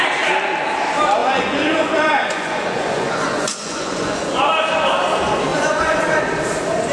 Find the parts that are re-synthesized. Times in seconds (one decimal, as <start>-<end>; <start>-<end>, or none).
1.2-4.4; 5.5-6.0